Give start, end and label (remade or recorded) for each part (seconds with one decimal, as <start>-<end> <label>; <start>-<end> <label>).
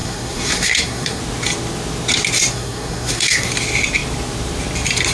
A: 0.0-1.2 remade; 1.2-2.5 recorded; 2.5-3.5 remade; 3.5-5.1 recorded